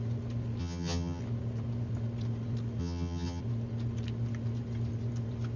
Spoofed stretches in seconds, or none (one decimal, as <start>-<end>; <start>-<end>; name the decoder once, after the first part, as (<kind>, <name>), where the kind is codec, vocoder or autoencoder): 0.6-1.2 (vocoder, HiFi-GAN); 2.8-3.4